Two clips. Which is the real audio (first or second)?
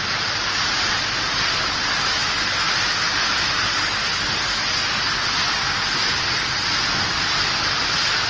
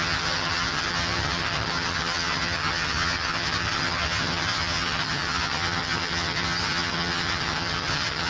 first